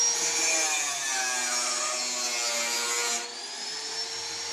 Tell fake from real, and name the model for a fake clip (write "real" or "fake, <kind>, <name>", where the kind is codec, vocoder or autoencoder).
real